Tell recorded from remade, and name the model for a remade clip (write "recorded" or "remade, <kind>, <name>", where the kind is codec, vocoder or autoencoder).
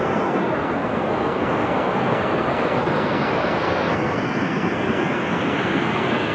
remade, codec, SNAC